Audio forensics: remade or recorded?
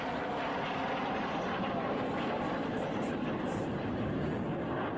recorded